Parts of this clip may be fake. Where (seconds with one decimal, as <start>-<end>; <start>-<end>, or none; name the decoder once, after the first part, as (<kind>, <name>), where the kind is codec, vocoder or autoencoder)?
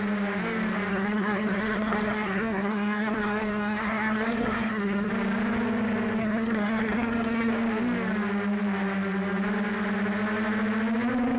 0.9-5.1 (codec, SNAC); 6.2-7.5